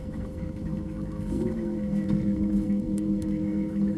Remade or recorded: remade